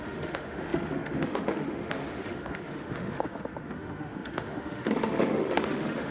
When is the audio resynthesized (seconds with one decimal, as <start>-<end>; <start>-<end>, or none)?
0.0-6.1